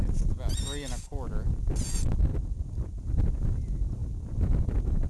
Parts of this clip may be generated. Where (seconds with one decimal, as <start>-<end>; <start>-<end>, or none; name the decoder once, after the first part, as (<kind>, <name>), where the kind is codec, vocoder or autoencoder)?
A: none